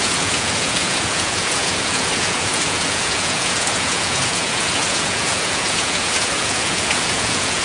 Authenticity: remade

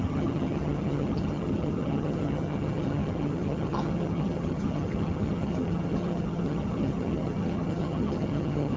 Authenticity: remade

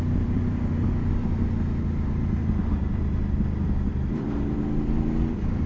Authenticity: remade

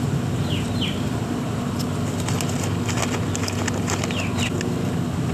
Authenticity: recorded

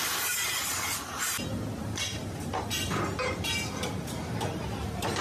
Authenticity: remade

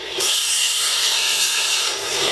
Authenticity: remade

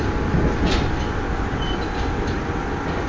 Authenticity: recorded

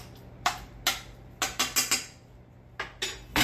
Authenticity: recorded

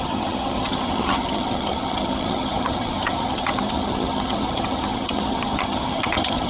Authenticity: remade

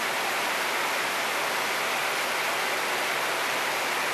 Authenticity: recorded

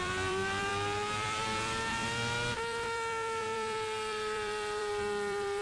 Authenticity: remade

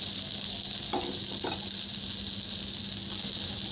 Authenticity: recorded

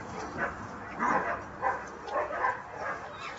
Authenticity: recorded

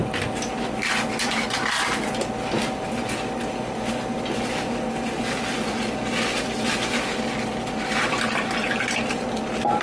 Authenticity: recorded